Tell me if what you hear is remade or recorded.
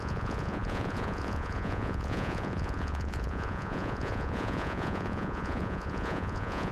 remade